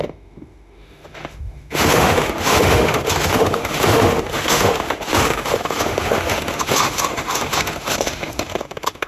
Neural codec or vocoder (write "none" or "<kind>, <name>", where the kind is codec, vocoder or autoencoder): autoencoder, DAC-VAE